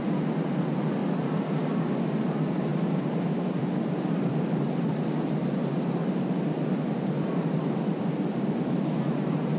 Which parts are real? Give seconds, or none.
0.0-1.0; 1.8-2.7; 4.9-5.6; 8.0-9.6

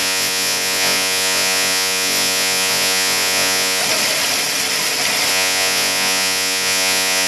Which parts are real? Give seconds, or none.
3.8-5.3

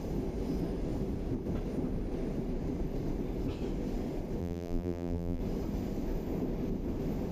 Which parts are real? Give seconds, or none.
0.0-4.4; 5.4-7.3

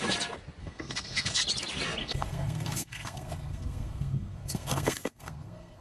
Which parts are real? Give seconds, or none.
0.0-0.6; 1.4-2.0

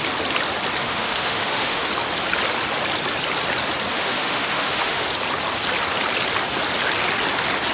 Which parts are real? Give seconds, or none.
0.0-0.8; 1.9-3.9; 5.1-7.7

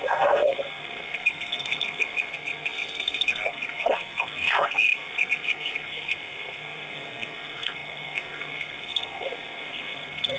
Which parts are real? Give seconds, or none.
none

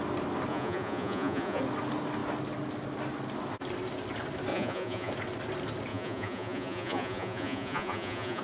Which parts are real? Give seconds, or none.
0.0-0.5; 1.6-4.5; 5.1-5.9

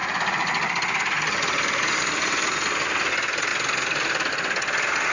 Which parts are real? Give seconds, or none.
0.0-5.1